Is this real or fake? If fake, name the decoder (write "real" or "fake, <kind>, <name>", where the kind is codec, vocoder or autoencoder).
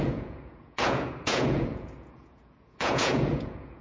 fake, vocoder, Vocos